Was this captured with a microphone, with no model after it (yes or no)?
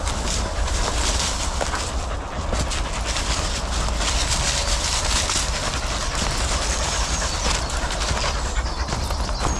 yes